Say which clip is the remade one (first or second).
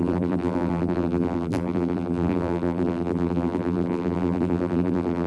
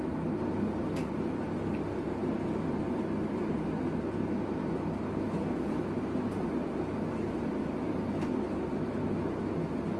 first